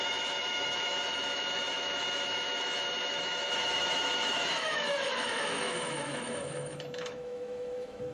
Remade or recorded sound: remade